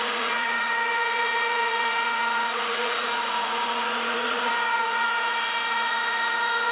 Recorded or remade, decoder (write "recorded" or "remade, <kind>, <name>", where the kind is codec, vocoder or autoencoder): remade, vocoder, Vocos